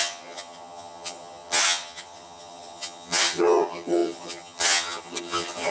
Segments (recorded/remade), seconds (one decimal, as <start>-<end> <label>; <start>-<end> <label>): 0.0-5.7 remade